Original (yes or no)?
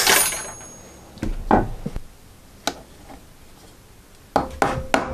yes